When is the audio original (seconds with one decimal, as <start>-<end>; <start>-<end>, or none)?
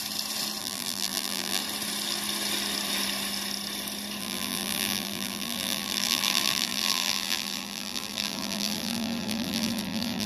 0.0-0.6; 1.6-4.2